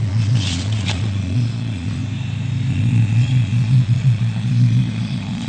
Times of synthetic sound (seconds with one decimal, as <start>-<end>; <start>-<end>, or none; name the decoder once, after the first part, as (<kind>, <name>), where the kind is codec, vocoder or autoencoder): 0.0-2.0 (vocoder, Vocos); 2.7-5.5